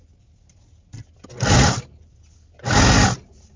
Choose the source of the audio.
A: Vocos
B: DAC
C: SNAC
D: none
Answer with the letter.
D